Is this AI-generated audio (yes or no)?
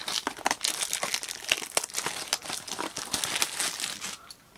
no